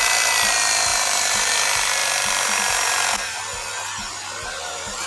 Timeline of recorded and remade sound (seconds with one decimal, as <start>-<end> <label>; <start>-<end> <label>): 0.0-0.9 recorded; 0.9-1.5 remade; 1.5-2.0 recorded; 2.0-3.4 remade; 3.4-5.1 recorded